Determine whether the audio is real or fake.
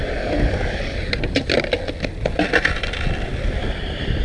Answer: real